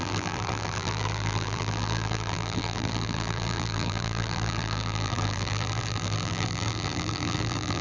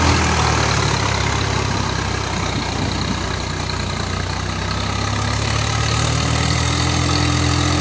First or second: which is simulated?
first